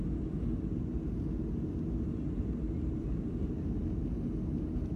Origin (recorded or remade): recorded